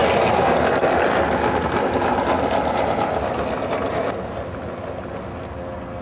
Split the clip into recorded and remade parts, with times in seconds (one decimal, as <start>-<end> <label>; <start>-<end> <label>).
0.0-6.0 recorded